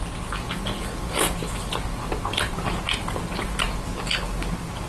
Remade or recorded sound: recorded